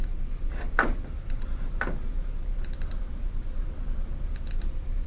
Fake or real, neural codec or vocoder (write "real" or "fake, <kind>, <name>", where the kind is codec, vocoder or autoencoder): real